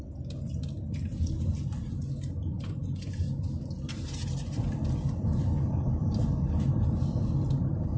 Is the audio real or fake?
real